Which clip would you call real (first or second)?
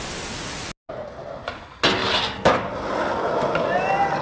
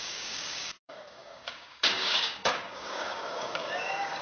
first